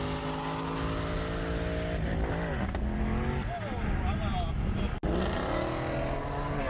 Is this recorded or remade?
recorded